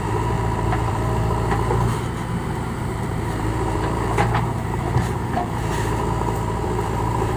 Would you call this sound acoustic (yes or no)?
no